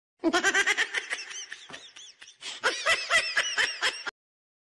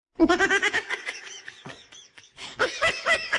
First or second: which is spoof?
second